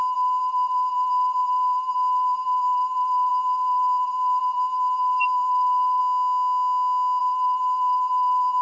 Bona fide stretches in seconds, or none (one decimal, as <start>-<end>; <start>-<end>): 6.0-7.2